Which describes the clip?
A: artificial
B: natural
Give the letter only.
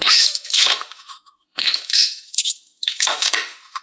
A